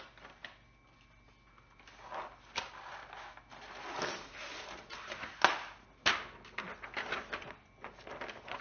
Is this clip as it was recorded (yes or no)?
yes